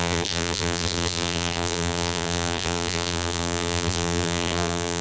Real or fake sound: fake